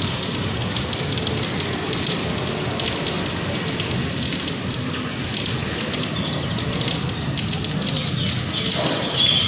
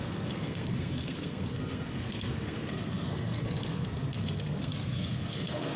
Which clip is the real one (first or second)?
first